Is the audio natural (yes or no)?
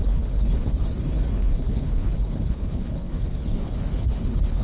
no